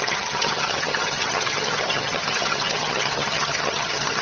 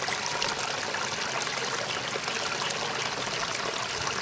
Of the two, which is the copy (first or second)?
first